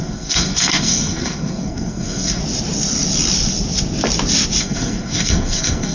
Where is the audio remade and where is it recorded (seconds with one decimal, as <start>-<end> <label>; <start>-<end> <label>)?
0.0-2.4 remade; 2.4-4.6 recorded; 4.6-5.9 remade